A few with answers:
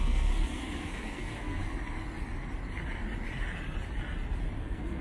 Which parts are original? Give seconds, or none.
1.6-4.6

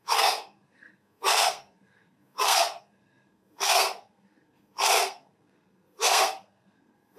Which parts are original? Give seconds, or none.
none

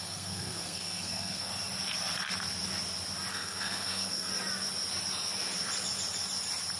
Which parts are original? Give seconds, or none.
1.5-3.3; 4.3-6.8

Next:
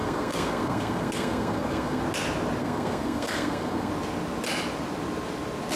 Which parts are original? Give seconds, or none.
2.0-2.6; 3.9-5.8